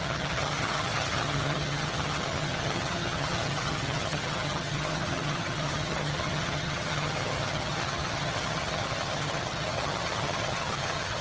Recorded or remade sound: remade